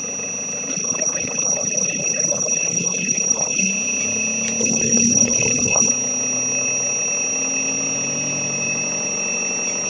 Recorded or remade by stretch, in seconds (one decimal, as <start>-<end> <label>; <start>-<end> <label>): 0.0-0.7 recorded; 0.7-3.7 remade; 3.7-4.6 recorded; 4.6-5.9 remade; 5.9-9.9 recorded